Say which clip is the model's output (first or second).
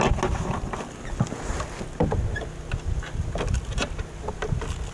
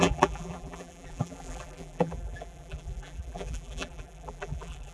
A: second